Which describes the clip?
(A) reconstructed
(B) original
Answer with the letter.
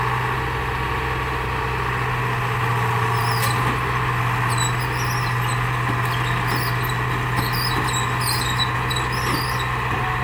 B